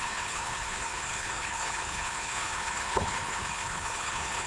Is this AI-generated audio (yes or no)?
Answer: yes